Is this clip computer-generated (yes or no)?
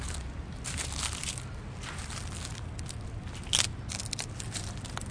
no